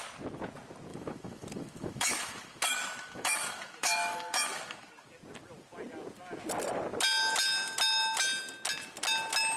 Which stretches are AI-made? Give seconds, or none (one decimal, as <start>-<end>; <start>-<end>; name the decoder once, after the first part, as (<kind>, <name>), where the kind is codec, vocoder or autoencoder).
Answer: 0.9-4.9 (autoencoder, DAC-VAE)